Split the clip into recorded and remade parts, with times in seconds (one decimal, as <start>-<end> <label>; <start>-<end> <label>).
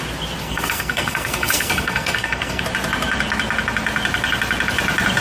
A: 0.0-0.4 recorded; 0.4-2.6 remade; 2.6-5.2 recorded